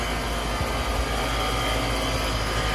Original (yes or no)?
yes